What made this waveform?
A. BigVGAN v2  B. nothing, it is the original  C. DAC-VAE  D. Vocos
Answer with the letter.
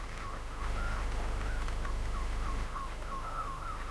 C